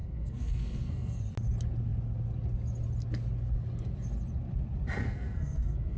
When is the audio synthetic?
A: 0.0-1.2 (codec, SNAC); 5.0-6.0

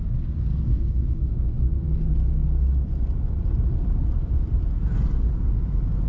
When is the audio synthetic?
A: 0.5-2.0 (codec, SNAC)

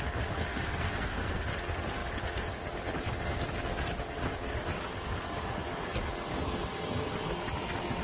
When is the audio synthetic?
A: 0.5-1.4 (codec, SNAC)

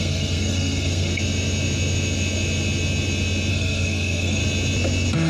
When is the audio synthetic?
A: 0.0-1.1 (codec, SNAC); 3.5-4.4